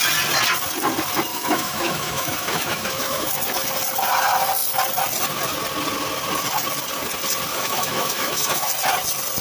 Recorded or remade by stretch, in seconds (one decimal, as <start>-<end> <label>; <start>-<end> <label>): 0.0-1.3 recorded; 1.3-3.3 remade; 3.3-7.5 recorded; 7.5-8.7 remade; 8.7-9.4 recorded